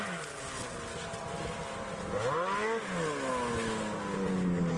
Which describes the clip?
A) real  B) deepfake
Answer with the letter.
A